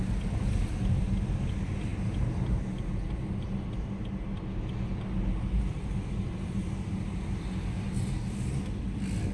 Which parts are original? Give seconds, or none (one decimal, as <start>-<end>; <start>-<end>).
0.0-9.3